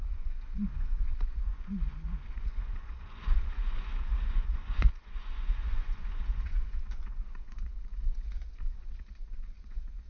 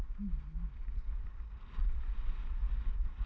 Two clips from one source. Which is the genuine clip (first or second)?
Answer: second